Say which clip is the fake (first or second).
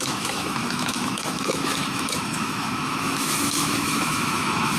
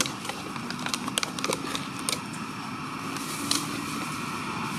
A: first